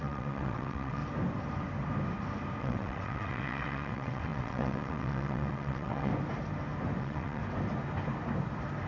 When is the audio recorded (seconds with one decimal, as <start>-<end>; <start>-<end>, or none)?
1.0-2.6; 6.1-7.0; 7.4-8.9